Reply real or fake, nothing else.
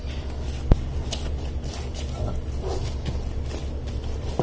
real